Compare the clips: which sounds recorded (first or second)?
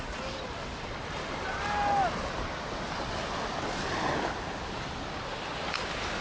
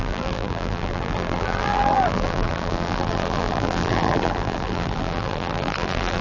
first